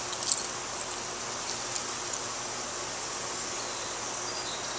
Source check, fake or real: real